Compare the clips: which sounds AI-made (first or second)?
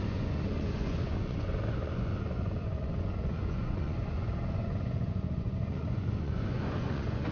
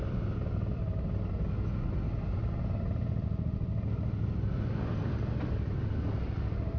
first